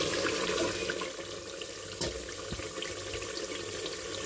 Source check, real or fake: real